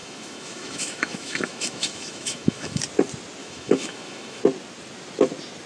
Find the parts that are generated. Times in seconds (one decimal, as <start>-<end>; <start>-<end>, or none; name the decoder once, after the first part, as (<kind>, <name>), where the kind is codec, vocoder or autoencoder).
0.0-2.8 (autoencoder, DAC-VAE); 3.4-4.4

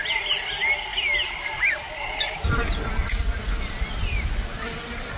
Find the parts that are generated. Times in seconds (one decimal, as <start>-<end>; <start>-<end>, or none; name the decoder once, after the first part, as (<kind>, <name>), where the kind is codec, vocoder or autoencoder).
none

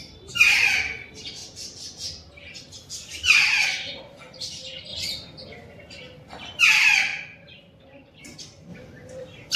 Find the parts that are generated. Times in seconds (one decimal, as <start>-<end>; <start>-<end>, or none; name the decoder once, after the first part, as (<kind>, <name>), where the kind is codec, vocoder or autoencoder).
0.0-1.4 (vocoder, BigVGAN v2); 4.0-4.9; 6.6-7.1; 8.2-9.6

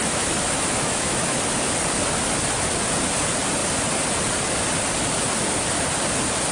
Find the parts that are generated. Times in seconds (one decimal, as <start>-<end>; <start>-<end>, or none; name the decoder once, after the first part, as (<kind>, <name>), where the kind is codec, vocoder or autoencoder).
0.0-1.3 (autoencoder, DAC-VAE)

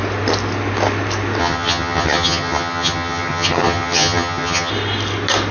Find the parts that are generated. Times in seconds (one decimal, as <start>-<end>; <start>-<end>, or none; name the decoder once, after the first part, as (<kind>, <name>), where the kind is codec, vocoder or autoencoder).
1.4-4.7 (vocoder, HiFi-GAN)

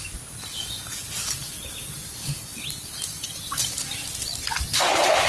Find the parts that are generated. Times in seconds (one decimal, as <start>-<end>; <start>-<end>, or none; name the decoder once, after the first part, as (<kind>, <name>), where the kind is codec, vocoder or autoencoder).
none